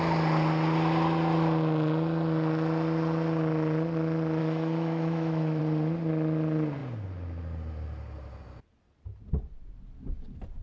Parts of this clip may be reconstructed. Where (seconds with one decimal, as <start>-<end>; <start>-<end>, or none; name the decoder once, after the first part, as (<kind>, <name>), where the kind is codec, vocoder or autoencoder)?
4.4-5.6 (autoencoder, DAC-VAE)